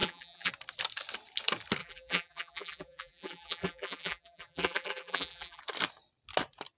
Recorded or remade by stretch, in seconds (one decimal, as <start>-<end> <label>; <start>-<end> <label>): 0.0-0.5 remade; 0.5-1.8 recorded; 1.8-5.6 remade; 5.6-6.8 recorded